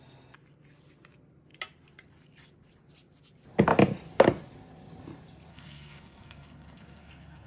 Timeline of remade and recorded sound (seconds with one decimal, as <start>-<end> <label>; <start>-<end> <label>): 0.0-5.5 recorded; 5.5-7.5 remade